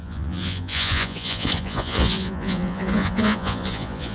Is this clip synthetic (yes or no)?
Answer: yes